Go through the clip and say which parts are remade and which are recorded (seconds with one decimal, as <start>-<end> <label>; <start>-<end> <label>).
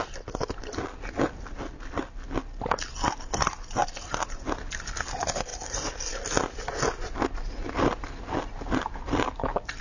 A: 0.0-9.8 recorded